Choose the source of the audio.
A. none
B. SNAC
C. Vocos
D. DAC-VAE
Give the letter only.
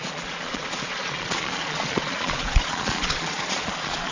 C